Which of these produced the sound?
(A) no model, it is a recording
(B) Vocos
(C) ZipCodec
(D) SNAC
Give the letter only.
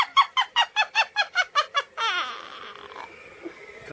A